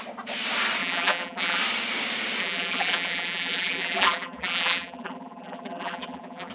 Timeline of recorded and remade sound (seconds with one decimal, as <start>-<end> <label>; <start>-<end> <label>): 0.0-0.8 recorded; 0.8-1.6 remade; 1.6-2.4 recorded; 2.4-6.5 remade

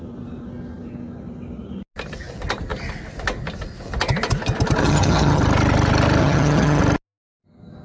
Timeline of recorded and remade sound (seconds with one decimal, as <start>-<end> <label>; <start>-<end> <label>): 0.0-4.8 recorded; 4.8-5.4 remade; 5.4-6.2 recorded; 6.2-6.8 remade; 6.8-7.8 recorded

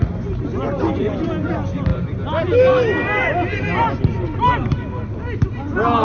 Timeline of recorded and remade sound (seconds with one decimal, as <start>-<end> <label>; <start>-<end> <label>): 0.0-6.0 recorded

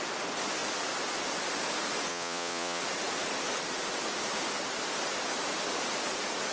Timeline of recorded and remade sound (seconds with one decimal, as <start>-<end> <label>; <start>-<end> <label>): 0.0-2.1 recorded; 2.1-2.8 remade; 2.8-6.5 recorded

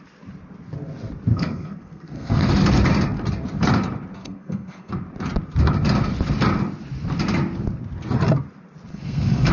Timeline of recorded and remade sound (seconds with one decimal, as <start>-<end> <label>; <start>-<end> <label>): 0.0-1.3 recorded; 1.3-2.5 remade; 2.5-4.2 recorded; 4.2-4.9 remade; 4.9-8.9 recorded; 8.9-9.5 remade